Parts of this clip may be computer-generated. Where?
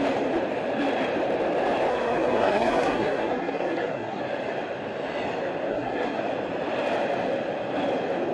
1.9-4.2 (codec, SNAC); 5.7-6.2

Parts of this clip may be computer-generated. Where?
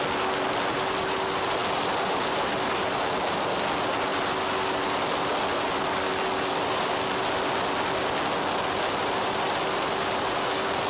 none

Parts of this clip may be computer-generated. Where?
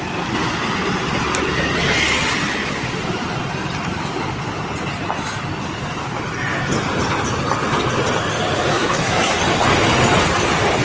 8.7-9.4 (codec, SNAC)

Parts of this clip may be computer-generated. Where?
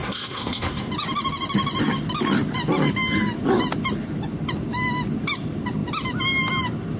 0.0-0.9 (codec, SNAC)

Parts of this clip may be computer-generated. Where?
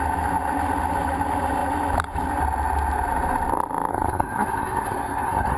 3.9-5.6 (codec, SNAC)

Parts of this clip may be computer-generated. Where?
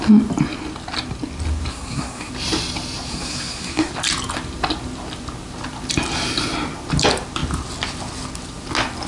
1.7-2.3 (codec, SNAC); 3.1-3.9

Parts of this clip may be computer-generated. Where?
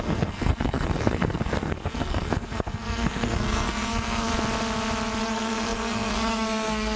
0.0-4.3 (codec, SNAC); 5.2-7.0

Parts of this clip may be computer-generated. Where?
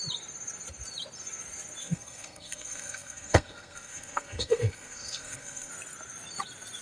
1.8-5.7 (codec, SNAC)